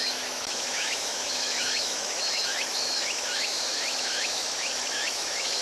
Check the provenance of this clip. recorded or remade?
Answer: remade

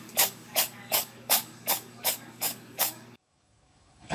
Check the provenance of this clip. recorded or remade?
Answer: remade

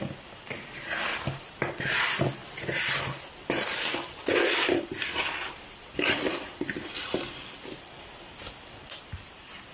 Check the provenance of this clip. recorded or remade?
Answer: remade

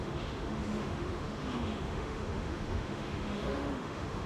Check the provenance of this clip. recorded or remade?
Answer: remade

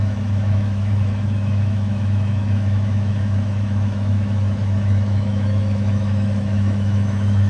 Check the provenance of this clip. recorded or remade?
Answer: remade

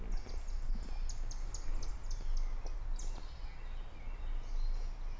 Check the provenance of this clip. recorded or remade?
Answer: recorded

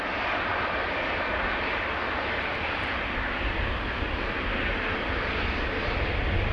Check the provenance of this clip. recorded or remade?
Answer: recorded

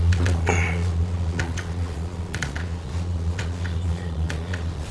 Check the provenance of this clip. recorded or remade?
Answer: remade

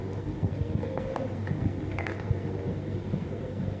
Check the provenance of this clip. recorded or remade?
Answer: remade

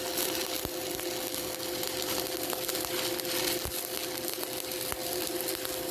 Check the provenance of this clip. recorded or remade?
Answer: recorded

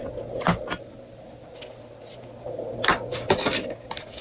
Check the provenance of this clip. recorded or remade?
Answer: recorded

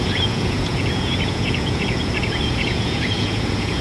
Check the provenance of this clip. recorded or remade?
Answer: remade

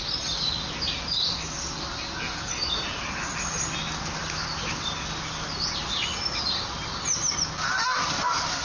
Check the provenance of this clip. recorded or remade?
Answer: recorded